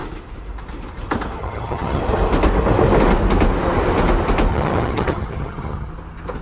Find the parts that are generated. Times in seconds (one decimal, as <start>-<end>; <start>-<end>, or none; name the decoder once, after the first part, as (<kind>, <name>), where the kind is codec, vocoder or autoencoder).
1.4-2.0 (vocoder, HiFi-GAN); 4.5-5.9